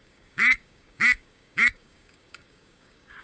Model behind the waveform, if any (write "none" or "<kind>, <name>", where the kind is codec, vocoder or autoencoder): codec, DAC